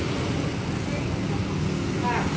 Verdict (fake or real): real